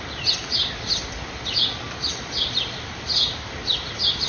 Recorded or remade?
recorded